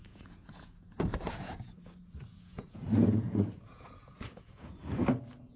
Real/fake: fake